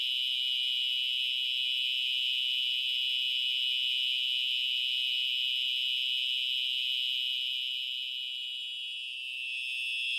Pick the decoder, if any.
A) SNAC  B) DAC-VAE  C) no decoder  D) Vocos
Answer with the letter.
B